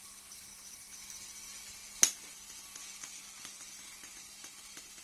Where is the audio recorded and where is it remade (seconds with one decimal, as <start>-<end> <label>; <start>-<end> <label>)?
0.0-0.5 recorded; 0.5-1.0 remade; 1.0-5.0 recorded